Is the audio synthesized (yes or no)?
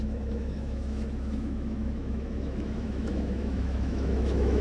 yes